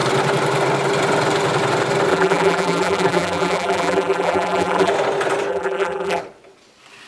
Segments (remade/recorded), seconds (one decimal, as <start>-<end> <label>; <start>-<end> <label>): 0.0-2.1 recorded; 2.1-4.9 remade; 4.9-5.5 recorded; 5.5-6.2 remade; 6.2-7.1 recorded